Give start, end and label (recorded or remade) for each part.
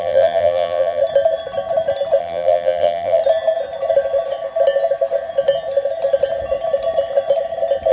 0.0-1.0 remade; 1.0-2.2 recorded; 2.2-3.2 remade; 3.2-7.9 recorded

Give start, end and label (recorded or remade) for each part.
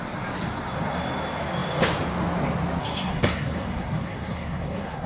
0.0-2.8 recorded; 2.8-5.1 remade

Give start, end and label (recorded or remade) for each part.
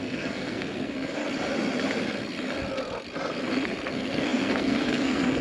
0.0-1.2 remade; 1.2-3.9 recorded; 3.9-5.4 remade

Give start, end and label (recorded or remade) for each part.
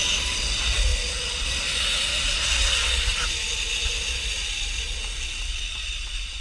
0.0-6.4 recorded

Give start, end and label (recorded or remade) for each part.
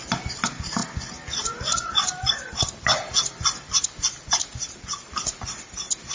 0.0-0.8 recorded; 0.8-4.4 remade; 4.4-6.1 recorded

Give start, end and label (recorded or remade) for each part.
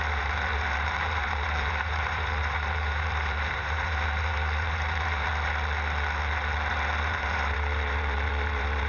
0.0-5.3 remade; 5.3-6.7 recorded; 6.7-8.9 remade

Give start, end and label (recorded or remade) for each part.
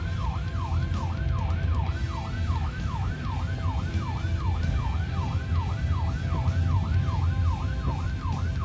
0.0-2.6 recorded; 2.6-3.1 remade; 3.1-8.6 recorded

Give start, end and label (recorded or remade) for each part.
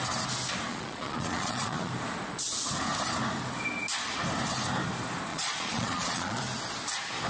0.0-0.7 recorded; 0.7-1.9 remade; 1.9-5.3 recorded; 5.3-6.4 remade; 6.4-7.3 recorded